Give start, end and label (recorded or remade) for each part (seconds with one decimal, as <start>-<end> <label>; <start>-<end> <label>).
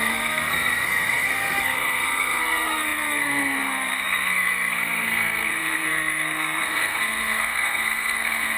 0.0-8.6 remade